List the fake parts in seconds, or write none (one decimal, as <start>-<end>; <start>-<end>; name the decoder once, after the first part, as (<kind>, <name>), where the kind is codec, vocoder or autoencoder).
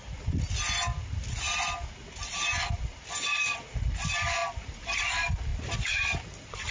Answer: none